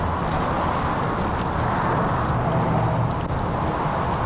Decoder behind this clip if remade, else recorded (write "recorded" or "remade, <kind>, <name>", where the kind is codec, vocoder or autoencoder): recorded